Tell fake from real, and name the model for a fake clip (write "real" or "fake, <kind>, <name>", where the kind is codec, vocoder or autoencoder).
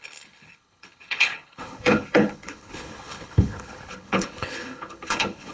fake, codec, HILCodec